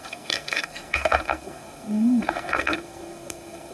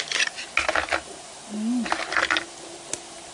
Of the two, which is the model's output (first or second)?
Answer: first